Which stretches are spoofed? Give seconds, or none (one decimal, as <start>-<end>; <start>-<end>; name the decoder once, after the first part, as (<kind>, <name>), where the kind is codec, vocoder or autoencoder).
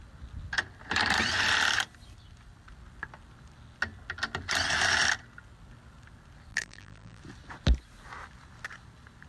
6.5-7.2 (vocoder, BigVGAN v2)